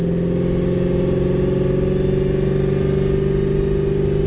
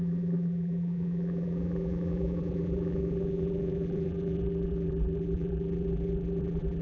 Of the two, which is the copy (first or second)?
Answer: second